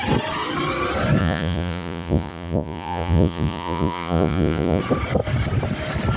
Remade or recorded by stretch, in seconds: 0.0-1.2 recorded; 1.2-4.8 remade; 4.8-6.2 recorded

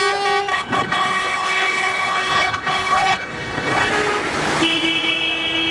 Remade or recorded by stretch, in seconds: 0.0-0.5 recorded; 0.5-3.9 remade; 3.9-5.7 recorded

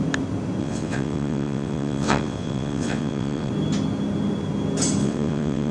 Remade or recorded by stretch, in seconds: 0.0-0.6 recorded; 0.6-3.5 remade; 3.5-5.0 recorded; 5.0-5.7 remade

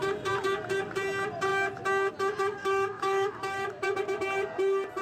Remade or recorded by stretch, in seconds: 0.0-2.6 recorded; 2.6-4.0 remade; 4.0-5.0 recorded

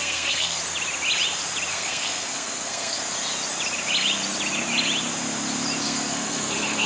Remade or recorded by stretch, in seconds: 0.0-0.6 remade; 0.6-1.7 recorded; 1.7-3.0 remade; 3.0-5.8 recorded; 5.8-6.9 remade

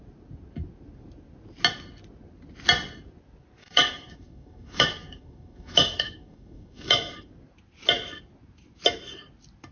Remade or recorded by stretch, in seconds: 0.0-3.6 recorded; 3.6-7.3 remade; 7.3-9.7 recorded